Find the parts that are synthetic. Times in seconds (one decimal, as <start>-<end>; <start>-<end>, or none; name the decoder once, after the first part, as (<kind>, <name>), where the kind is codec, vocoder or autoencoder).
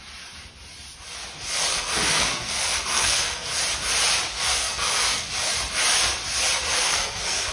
1.7-3.6 (codec, SNAC); 4.3-5.3; 6.7-7.5